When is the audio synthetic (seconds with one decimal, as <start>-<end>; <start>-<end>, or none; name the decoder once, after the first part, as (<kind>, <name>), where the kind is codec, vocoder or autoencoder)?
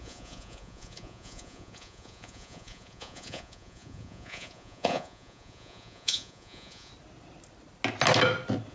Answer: 0.0-6.9 (vocoder, Vocos)